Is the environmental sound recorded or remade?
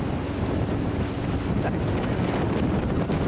recorded